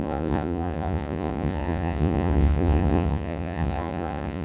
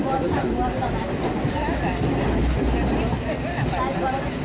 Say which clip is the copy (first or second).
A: first